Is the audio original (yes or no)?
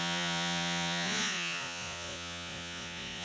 no